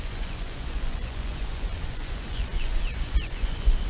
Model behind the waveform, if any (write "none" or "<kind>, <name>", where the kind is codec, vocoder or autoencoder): vocoder, Vocos